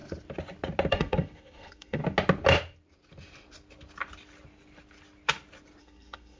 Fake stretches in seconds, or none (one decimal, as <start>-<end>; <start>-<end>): 0.9-2.0; 5.8-6.4